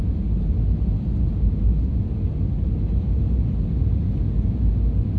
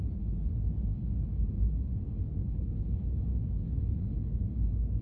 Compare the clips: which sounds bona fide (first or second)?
first